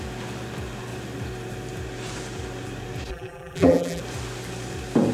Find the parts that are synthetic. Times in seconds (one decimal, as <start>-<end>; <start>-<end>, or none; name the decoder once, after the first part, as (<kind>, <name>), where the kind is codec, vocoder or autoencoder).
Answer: 3.1-4.0 (vocoder, BigVGAN v2)

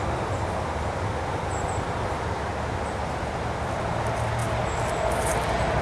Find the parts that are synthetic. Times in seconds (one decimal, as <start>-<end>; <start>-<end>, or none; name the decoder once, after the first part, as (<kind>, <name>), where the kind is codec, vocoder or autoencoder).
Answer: none

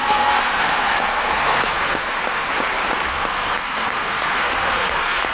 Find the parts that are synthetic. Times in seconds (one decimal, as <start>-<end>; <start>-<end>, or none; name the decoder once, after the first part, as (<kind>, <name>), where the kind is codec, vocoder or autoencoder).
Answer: 0.0-2.5 (codec, SNAC); 3.1-5.3

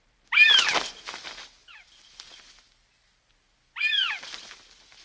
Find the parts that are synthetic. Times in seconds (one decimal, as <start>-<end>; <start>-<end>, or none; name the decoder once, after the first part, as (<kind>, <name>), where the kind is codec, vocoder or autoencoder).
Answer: none

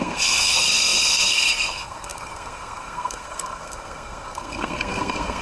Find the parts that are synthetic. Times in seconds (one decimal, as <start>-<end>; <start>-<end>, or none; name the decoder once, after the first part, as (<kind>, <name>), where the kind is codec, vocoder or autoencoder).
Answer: 0.0-5.4 (codec, SNAC)